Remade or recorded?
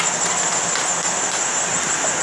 recorded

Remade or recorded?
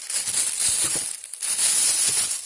recorded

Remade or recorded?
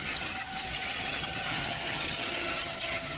remade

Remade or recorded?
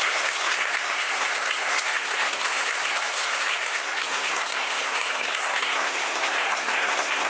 remade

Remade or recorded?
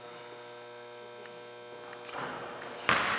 recorded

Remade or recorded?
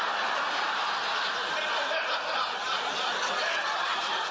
recorded